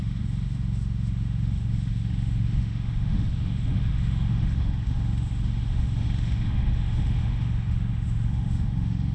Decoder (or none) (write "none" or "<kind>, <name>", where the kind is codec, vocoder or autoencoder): autoencoder, DAC-VAE